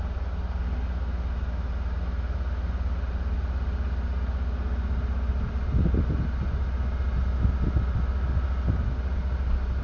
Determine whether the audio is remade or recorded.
recorded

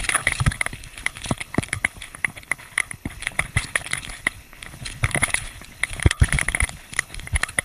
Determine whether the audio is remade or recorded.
remade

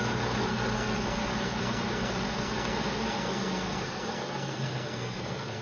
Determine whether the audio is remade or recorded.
remade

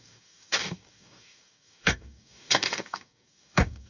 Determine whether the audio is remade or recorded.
remade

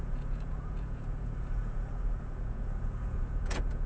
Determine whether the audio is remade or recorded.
remade